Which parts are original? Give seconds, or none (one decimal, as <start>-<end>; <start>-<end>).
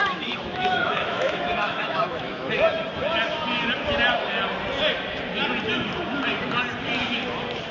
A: 2.5-7.7